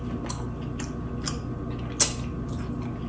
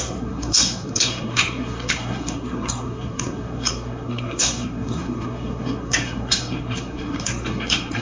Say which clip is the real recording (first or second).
first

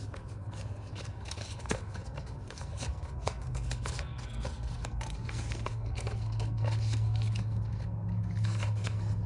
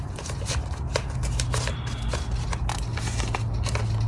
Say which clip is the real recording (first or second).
second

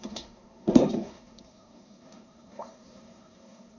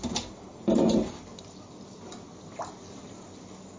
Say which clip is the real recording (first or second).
second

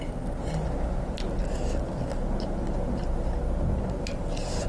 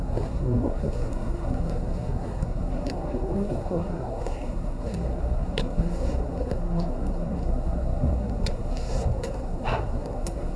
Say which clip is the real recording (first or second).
first